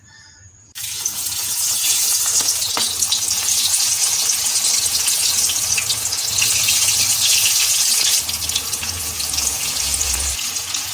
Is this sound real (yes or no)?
no